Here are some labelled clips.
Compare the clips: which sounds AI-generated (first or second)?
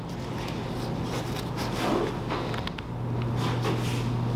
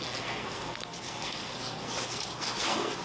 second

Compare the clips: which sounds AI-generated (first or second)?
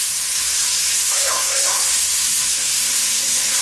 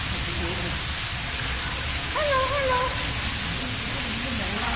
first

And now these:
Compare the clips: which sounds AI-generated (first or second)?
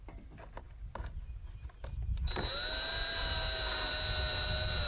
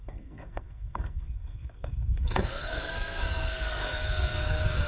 second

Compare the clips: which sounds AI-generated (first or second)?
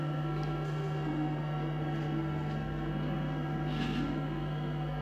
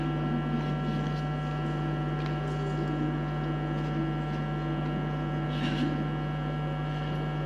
first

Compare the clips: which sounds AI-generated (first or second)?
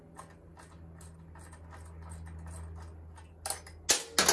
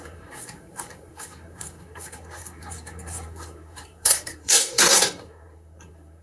second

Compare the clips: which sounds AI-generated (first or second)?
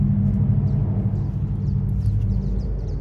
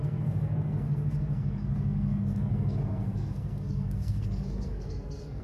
second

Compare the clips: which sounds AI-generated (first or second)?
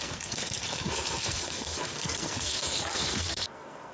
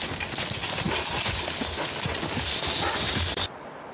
first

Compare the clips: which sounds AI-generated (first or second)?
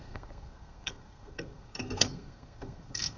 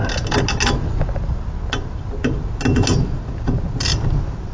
first